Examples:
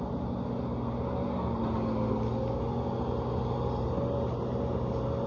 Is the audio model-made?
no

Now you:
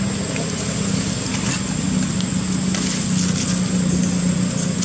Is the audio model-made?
no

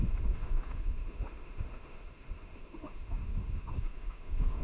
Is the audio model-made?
yes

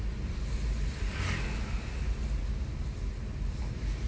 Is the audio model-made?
no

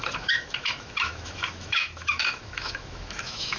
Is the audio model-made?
yes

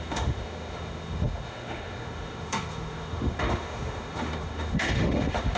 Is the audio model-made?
yes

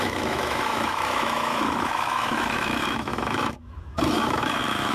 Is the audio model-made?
yes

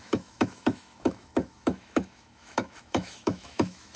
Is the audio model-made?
yes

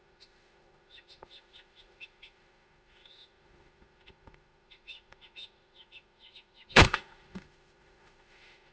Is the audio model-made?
yes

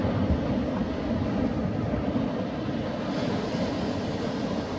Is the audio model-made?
no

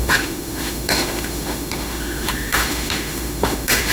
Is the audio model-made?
yes